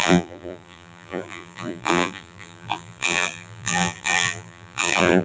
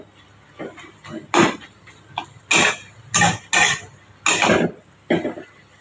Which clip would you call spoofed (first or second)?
first